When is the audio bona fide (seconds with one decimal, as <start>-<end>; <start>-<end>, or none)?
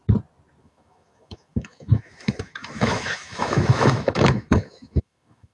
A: 0.0-0.6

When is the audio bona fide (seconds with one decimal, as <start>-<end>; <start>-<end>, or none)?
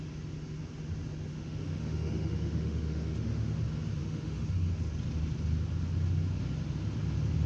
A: 0.0-1.3; 3.6-4.0; 4.7-7.5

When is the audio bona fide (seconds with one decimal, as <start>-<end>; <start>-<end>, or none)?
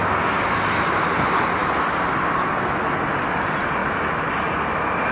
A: 0.0-5.1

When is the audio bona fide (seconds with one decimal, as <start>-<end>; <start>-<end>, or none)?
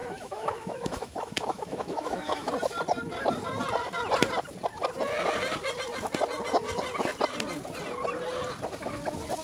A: 2.5-9.4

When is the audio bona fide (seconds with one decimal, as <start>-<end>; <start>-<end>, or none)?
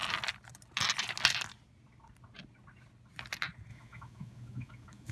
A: 0.0-3.7